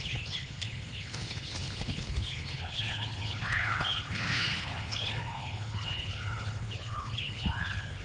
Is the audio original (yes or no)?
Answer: no